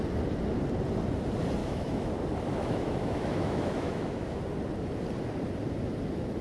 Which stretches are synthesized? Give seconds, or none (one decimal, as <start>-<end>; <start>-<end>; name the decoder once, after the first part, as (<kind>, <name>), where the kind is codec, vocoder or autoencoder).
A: 1.6-2.1 (autoencoder, DAC-VAE); 2.6-4.4